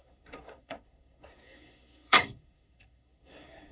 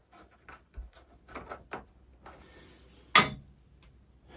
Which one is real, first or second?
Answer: second